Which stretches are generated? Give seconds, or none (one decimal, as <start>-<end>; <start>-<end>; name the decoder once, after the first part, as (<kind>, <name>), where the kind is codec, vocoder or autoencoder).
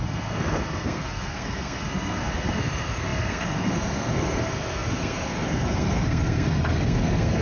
0.0-7.4 (codec, SNAC)